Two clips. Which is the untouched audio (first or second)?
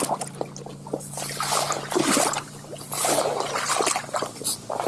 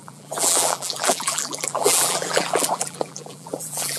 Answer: first